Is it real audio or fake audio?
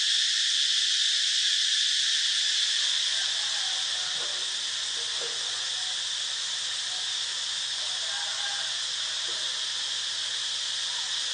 real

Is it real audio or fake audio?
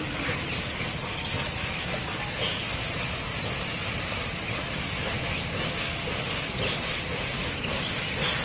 real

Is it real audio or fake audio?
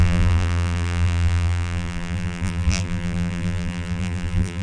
fake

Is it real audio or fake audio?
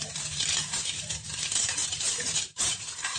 fake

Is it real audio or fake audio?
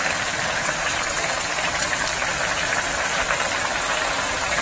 fake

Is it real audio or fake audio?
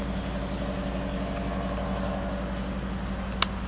real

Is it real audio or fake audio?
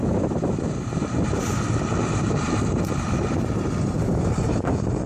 fake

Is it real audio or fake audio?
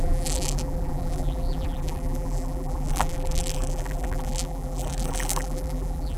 fake